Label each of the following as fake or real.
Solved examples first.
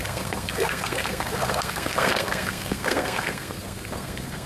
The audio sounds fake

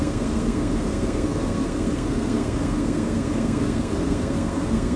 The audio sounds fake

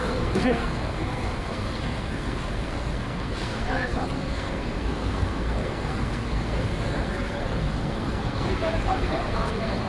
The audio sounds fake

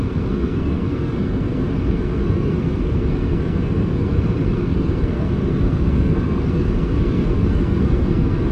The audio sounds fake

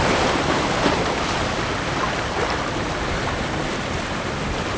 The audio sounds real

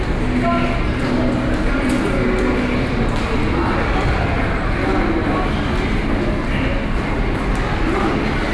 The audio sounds real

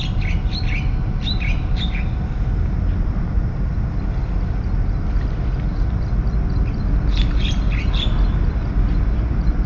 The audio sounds real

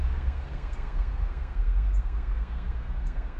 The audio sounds fake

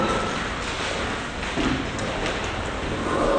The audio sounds real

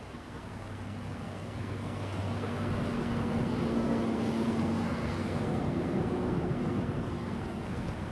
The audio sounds fake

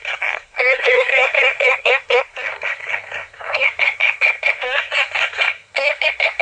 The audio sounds fake